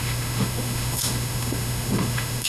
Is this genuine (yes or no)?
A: no